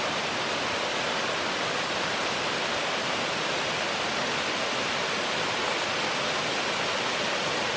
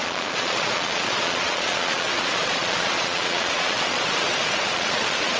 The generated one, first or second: second